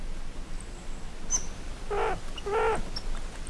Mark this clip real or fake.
real